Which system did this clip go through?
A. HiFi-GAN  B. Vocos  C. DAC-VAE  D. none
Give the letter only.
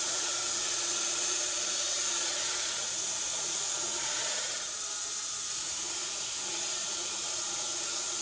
B